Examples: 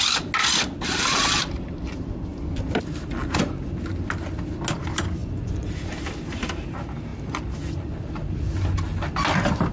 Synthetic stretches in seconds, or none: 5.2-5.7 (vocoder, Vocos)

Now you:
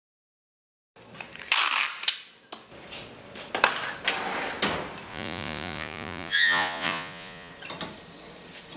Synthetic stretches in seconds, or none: 5.1-7.5 (vocoder, Vocos)

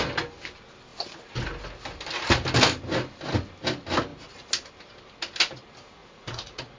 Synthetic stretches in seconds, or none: 6.0-6.8 (vocoder, Vocos)

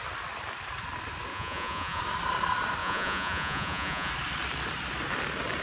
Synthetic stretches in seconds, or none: 1.3-2.0 (vocoder, Vocos); 2.8-4.1

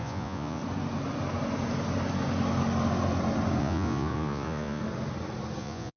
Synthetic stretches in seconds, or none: 0.0-0.6 (vocoder, Vocos); 3.6-4.8; 5.6-6.0

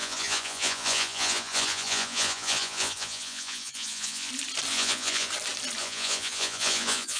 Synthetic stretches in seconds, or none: 0.0-4.3 (vocoder, Vocos); 4.7-5.3; 5.8-7.2

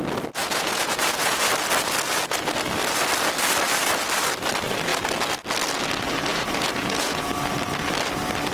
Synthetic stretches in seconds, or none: 0.4-1.4 (vocoder, Vocos); 6.3-7.3